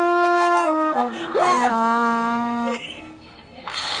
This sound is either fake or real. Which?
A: fake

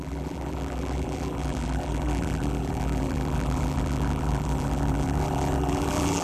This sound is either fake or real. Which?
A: fake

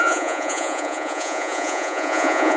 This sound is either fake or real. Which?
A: fake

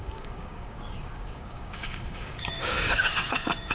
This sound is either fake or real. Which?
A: fake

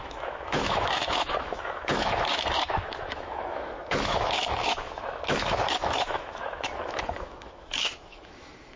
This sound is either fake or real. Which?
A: fake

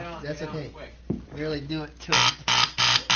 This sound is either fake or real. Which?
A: real